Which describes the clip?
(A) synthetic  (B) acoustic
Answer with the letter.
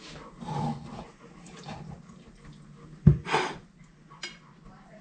B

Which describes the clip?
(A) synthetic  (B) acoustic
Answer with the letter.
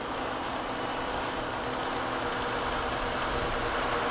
B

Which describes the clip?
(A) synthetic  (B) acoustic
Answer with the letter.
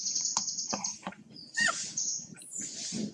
A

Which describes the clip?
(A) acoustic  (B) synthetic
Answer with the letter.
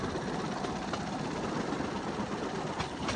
A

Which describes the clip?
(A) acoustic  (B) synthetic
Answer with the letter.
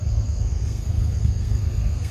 B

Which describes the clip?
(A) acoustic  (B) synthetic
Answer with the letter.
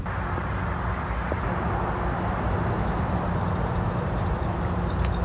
A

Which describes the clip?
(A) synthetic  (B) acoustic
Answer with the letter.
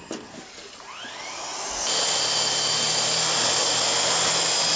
B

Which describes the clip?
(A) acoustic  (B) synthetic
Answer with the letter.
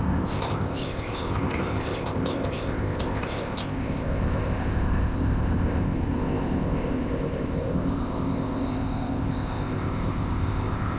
B